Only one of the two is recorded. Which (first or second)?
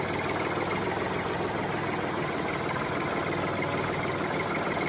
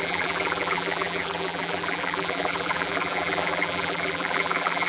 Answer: first